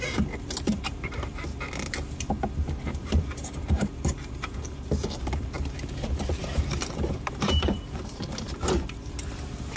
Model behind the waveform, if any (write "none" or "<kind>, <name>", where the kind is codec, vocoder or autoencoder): vocoder, BigVGAN v2